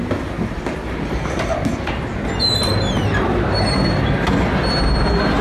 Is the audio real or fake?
real